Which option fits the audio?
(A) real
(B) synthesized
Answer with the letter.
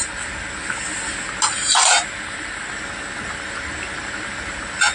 A